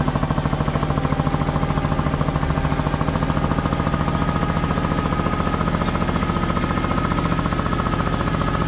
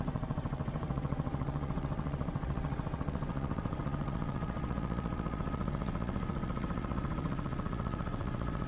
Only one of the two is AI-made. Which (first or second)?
second